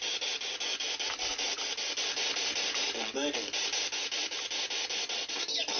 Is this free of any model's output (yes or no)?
yes